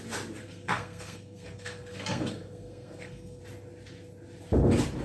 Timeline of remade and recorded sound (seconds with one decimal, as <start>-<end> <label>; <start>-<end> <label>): 0.0-0.4 recorded; 0.4-3.4 remade; 3.4-5.0 recorded